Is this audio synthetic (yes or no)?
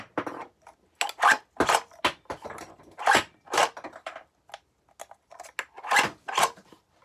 no